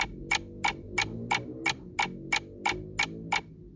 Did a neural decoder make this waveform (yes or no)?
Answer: no